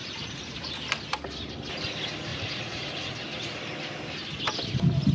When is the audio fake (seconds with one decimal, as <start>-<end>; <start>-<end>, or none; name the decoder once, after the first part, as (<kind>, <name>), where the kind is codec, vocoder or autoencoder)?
0.0-0.7 (vocoder, Vocos); 2.3-3.1